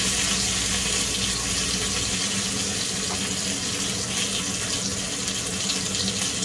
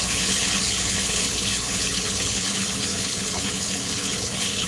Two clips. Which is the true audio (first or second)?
first